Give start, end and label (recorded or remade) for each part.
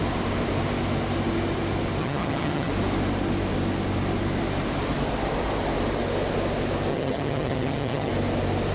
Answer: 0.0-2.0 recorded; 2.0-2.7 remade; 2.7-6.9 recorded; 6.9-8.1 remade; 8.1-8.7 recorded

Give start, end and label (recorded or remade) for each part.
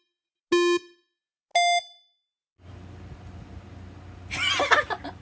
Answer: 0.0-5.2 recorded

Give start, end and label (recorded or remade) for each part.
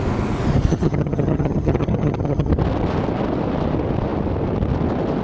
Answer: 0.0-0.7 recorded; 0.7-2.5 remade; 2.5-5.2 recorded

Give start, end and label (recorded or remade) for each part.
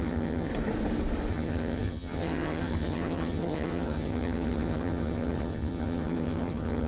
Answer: 0.0-0.5 remade; 0.5-1.3 recorded; 1.3-6.9 remade